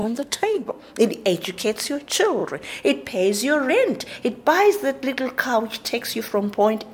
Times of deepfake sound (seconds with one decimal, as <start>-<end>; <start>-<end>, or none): 0.0-0.7